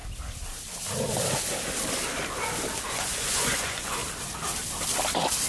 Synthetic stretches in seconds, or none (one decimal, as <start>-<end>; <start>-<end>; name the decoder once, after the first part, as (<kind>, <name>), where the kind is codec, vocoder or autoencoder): 2.9-4.0 (vocoder, Vocos)